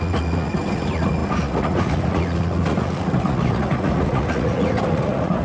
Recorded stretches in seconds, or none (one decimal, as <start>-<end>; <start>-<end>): none